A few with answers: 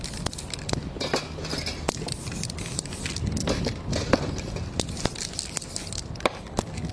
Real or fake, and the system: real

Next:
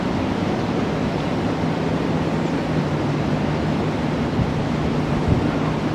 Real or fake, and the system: real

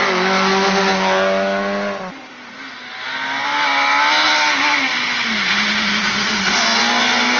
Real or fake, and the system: real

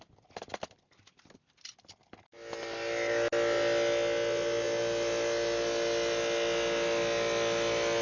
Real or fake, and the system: real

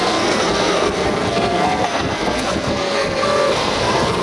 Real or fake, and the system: fake, codec, SNAC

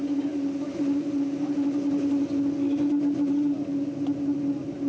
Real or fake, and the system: real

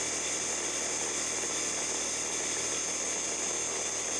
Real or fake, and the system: real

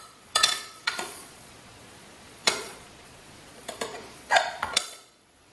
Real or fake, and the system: fake, vocoder, Vocos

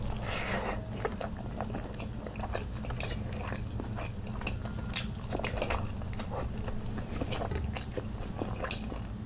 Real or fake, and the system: real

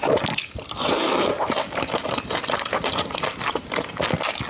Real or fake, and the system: real